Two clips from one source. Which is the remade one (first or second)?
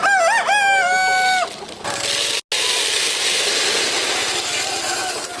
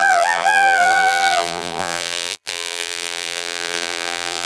second